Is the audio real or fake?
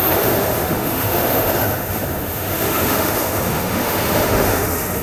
fake